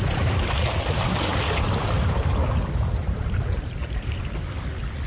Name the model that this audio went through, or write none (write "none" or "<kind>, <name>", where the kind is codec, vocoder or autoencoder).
none